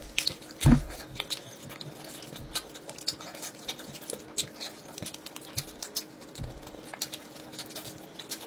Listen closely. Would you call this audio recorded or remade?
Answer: recorded